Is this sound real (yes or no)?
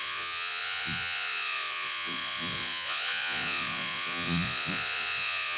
no